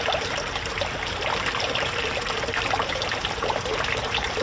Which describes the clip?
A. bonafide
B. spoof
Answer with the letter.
A